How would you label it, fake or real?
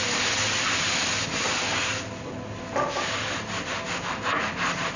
real